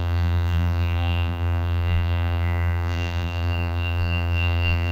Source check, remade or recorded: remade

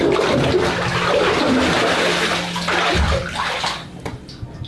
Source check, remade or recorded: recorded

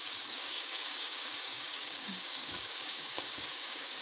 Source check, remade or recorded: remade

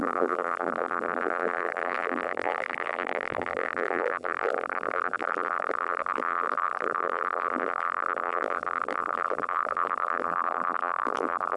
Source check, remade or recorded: remade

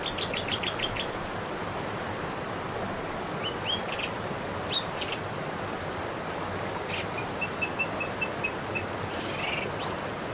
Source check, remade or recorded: recorded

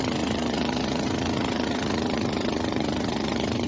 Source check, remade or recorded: remade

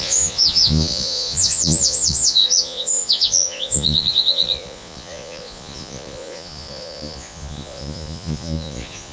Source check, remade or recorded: remade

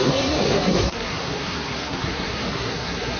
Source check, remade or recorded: remade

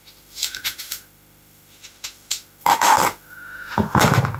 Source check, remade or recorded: remade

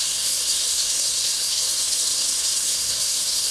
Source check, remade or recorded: remade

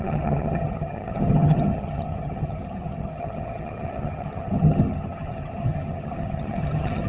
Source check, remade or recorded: remade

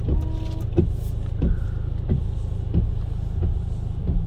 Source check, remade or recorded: recorded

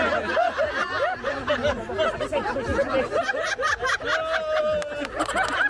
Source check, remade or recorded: recorded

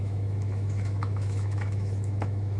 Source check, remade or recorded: remade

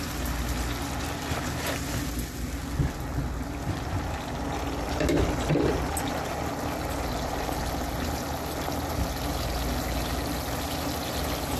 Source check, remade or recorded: recorded